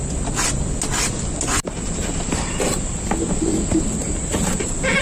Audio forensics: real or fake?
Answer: real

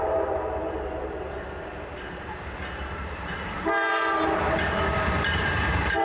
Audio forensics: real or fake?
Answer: fake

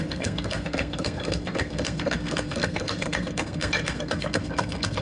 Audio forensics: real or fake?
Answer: fake